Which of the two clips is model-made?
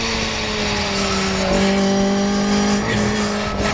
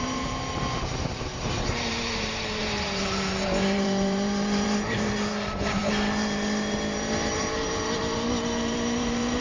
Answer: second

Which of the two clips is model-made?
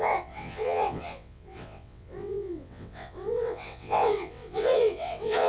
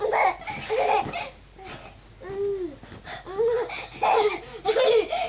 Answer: first